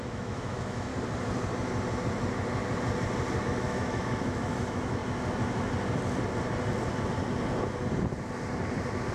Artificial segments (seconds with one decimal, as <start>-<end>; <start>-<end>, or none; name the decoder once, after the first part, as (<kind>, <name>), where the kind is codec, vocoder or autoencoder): 0.0-0.9 (autoencoder, DAC-VAE); 3.4-5.0